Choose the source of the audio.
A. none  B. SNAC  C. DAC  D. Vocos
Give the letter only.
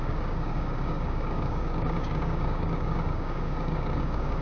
C